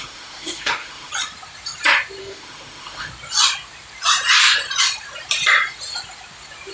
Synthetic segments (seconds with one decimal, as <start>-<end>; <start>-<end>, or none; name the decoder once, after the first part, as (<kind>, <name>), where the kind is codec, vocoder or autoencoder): 0.0-1.1 (autoencoder, DAC-VAE); 2.2-3.1